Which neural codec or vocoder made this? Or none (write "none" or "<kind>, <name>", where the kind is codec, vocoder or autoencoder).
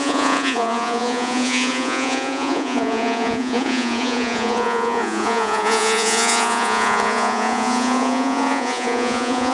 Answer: vocoder, Vocos